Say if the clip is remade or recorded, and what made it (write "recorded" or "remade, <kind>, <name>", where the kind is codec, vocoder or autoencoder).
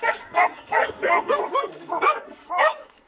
remade, codec, SNAC